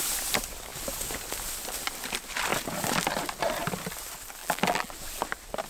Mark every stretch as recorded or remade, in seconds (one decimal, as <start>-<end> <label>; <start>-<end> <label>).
0.0-4.4 recorded; 4.4-4.9 remade; 4.9-5.7 recorded